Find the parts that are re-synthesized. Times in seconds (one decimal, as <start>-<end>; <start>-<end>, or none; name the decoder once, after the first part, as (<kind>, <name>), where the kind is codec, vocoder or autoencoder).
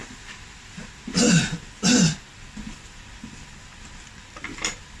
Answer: none